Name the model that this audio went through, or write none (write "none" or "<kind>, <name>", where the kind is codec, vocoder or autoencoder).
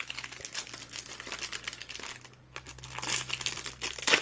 none